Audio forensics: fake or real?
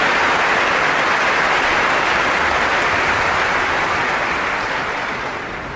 real